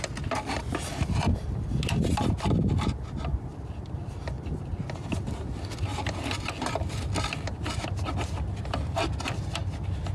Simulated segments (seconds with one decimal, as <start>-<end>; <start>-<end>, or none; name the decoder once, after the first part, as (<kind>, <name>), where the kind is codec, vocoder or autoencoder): none